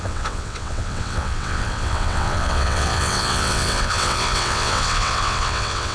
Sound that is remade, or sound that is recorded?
remade